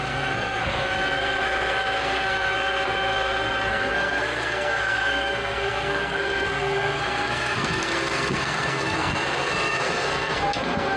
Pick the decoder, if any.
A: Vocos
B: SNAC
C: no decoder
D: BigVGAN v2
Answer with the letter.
B